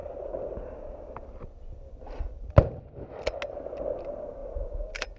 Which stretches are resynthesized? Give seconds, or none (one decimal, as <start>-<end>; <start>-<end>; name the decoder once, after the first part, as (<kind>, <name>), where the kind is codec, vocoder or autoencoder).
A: none